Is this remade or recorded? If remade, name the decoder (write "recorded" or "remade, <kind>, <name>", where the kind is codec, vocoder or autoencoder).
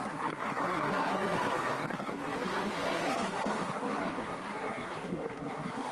remade, codec, SNAC